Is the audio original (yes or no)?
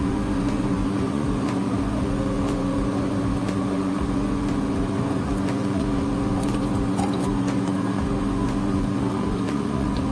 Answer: no